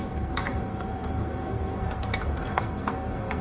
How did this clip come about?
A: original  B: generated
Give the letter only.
B